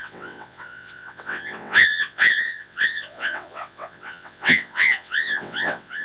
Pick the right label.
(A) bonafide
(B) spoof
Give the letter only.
B